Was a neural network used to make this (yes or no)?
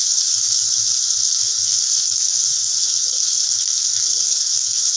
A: yes